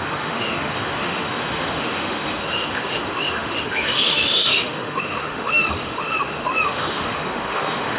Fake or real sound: fake